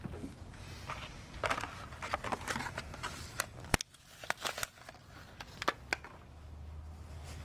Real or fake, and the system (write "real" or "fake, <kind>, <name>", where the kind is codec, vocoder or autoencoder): real